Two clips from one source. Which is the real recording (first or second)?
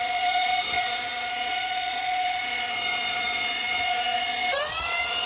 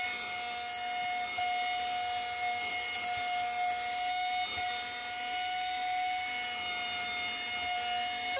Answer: second